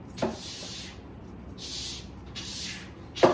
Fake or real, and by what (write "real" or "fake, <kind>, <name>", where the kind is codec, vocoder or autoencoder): real